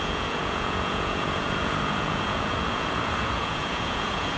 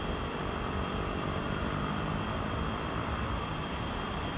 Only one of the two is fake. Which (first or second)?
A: first